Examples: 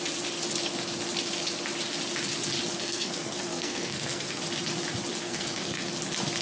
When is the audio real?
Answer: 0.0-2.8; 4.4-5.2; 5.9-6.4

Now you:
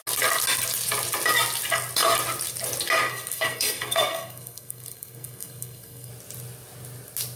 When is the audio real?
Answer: 0.0-3.1; 6.1-7.4

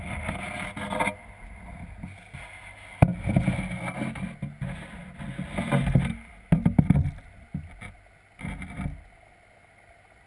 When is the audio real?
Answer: 0.0-10.3

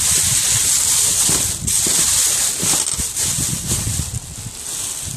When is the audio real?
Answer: 0.0-5.2

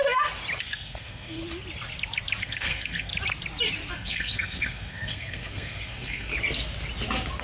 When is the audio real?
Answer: 0.0-0.6; 1.4-2.4; 3.1-3.9; 6.3-7.4

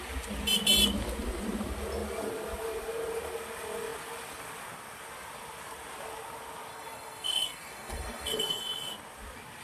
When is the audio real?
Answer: 0.0-6.7; 8.6-9.6